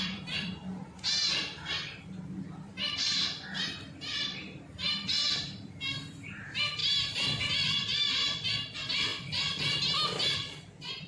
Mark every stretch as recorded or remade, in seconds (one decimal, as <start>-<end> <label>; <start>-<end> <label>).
0.0-11.1 remade